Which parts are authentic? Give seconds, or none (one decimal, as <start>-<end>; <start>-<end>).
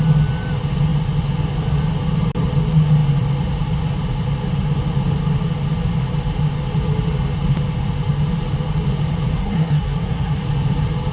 0.0-9.4; 10.4-11.1